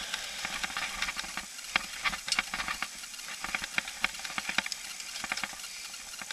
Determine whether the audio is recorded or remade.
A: recorded